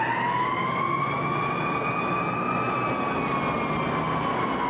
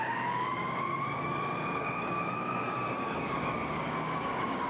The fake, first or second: second